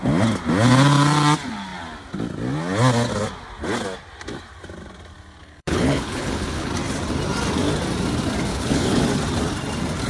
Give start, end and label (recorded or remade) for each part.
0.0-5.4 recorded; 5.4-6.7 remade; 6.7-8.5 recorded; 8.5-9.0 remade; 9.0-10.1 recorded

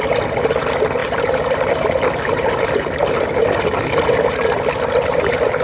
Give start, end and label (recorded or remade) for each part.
0.0-1.0 recorded; 1.0-1.7 remade; 1.7-5.6 recorded

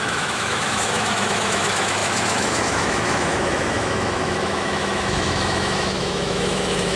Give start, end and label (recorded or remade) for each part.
0.0-7.0 remade

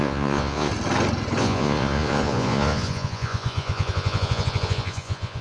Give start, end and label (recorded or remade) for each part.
0.0-0.7 remade; 0.7-1.4 recorded; 1.4-5.4 remade

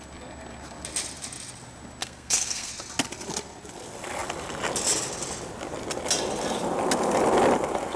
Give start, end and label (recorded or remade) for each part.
0.0-2.0 recorded; 2.0-2.7 remade; 2.7-8.0 recorded

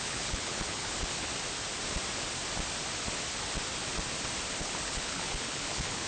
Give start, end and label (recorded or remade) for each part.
0.0-1.3 remade; 1.3-4.6 recorded; 4.6-6.1 remade

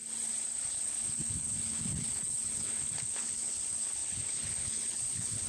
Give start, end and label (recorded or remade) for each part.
0.0-0.7 recorded; 0.7-5.5 remade

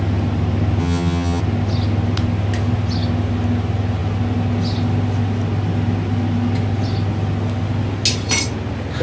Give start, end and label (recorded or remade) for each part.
0.0-0.8 recorded; 0.8-1.4 remade; 1.4-9.0 recorded